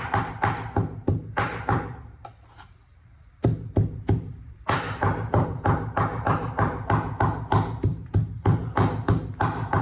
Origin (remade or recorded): remade